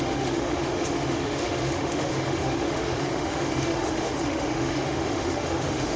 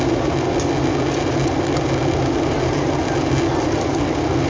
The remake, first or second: first